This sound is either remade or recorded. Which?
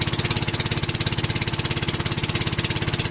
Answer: recorded